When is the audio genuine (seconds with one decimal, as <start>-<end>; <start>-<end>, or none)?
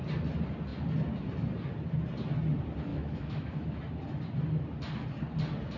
0.0-2.9; 3.8-5.8